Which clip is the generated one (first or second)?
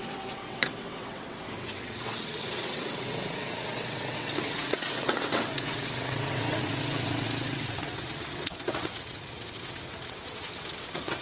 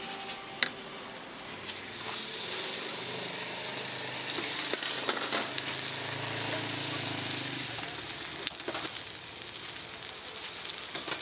first